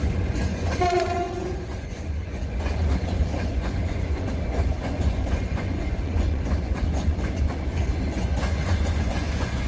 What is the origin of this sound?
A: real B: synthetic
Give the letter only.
B